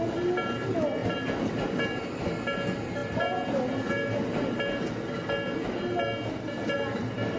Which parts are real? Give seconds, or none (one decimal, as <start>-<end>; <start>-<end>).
0.0-7.4